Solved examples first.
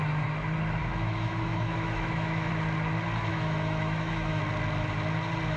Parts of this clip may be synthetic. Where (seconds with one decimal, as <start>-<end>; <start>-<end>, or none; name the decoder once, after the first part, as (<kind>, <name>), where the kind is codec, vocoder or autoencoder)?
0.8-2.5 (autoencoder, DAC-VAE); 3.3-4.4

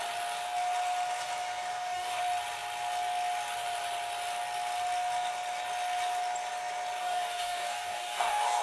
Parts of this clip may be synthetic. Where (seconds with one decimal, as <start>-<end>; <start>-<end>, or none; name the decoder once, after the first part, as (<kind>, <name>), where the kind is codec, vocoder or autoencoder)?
1.7-2.2 (codec, DAC); 7.0-8.6

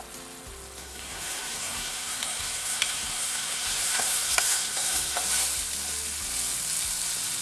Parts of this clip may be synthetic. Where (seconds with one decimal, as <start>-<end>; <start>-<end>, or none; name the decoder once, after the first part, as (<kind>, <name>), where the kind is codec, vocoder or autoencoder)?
0.8-5.2 (codec, SNAC)

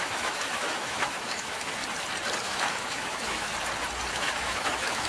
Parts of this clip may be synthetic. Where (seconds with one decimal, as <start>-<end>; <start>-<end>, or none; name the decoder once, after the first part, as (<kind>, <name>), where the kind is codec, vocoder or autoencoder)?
0.0-1.8 (autoencoder, DAC-VAE); 2.4-3.5; 4.1-5.1

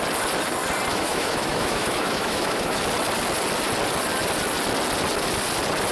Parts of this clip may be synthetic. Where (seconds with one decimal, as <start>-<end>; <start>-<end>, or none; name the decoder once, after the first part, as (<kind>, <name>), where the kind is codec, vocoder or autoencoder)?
0.9-2.8 (autoencoder, DAC-VAE)

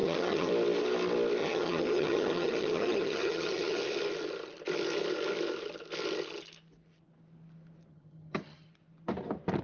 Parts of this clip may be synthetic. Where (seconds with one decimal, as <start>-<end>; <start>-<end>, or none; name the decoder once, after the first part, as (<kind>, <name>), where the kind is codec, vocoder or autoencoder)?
0.0-0.5 (vocoder, HiFi-GAN); 1.4-3.8; 7.9-8.7

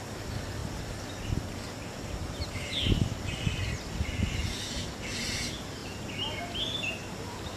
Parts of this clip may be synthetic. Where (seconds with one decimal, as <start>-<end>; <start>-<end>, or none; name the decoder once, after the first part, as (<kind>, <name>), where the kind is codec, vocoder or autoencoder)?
none

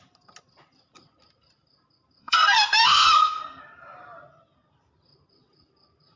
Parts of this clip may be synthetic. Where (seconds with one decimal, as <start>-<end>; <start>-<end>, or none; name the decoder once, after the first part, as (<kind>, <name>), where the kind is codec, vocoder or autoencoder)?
2.2-3.6 (codec, SNAC)